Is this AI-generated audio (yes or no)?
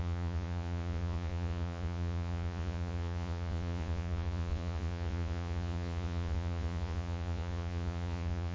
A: yes